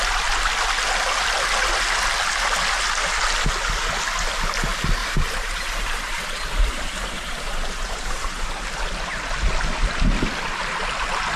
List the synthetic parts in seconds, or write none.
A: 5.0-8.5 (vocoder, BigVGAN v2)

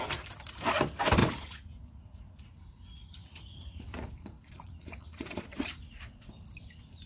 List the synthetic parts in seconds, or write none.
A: 1.2-2.3 (vocoder, Vocos); 3.0-6.3